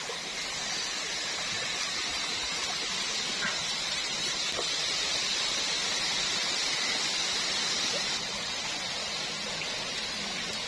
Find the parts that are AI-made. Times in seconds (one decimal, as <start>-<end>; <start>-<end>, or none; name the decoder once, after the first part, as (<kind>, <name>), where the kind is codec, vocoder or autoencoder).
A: 2.1-2.6 (vocoder, BigVGAN v2); 3.5-4.4